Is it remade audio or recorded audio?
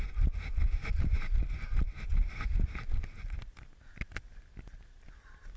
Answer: recorded